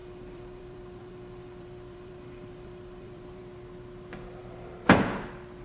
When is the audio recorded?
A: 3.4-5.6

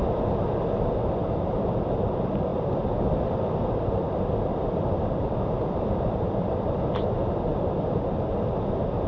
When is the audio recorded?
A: 0.0-2.5; 7.1-7.5; 8.2-9.1

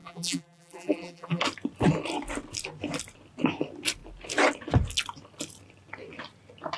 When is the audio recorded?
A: 1.4-6.8

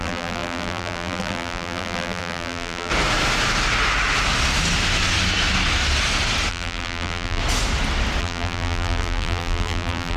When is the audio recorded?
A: 2.9-6.5; 7.4-8.2

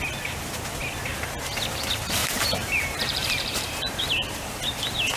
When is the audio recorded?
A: 0.0-2.2; 4.1-5.2